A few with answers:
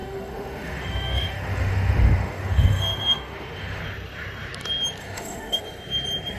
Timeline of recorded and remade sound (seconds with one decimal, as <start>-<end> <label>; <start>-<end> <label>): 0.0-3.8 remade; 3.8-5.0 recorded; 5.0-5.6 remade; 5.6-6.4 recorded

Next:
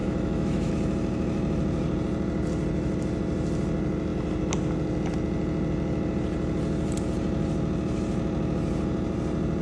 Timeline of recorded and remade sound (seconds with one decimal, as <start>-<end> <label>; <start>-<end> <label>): 0.0-0.7 remade; 0.7-9.6 recorded

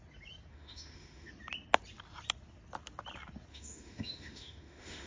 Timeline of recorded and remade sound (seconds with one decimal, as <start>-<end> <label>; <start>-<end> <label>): 0.0-0.5 recorded; 0.5-1.3 remade; 1.3-3.5 recorded; 3.5-5.1 remade

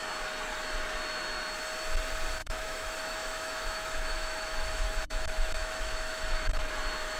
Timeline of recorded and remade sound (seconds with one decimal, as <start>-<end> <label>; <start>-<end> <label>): 0.0-2.4 recorded; 2.4-6.7 remade; 6.7-7.2 recorded

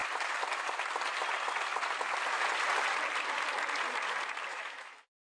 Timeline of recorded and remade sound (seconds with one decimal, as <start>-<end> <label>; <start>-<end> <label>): 0.0-4.5 recorded; 4.5-5.3 remade

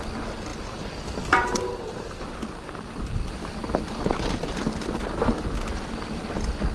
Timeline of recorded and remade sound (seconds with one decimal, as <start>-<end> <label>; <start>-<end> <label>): 0.0-6.7 recorded